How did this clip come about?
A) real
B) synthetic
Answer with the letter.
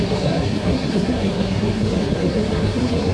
B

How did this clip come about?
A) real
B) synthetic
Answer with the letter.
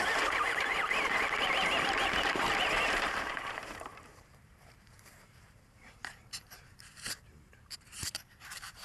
B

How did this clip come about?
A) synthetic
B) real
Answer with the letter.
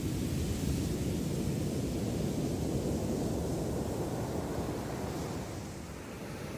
B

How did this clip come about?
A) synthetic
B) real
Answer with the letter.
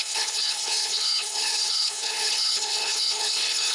A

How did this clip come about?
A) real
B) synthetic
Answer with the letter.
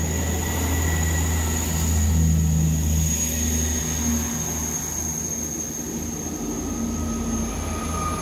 A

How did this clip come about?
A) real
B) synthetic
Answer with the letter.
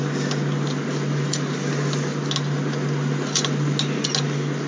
A